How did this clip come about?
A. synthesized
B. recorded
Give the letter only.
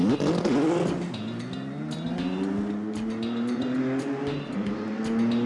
B